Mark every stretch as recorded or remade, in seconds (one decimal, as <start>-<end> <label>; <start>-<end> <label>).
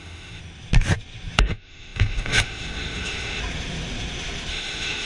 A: 0.0-0.4 remade; 0.4-1.4 recorded; 1.4-3.4 remade; 3.4-4.5 recorded; 4.5-5.1 remade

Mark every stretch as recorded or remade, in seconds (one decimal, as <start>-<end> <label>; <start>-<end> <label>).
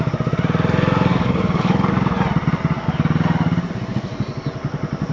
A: 0.0-1.1 recorded; 1.1-1.9 remade; 1.9-5.1 recorded